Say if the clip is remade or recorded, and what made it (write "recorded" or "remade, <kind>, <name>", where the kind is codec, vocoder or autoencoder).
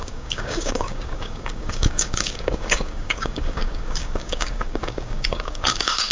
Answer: remade, codec, DAC